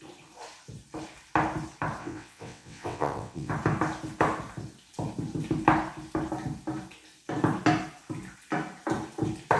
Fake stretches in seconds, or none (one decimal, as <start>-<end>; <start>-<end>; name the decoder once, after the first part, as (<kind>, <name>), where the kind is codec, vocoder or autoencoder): 2.0-3.5 (vocoder, WaveNeXt)